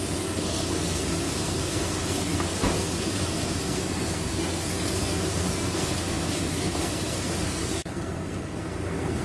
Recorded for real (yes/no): no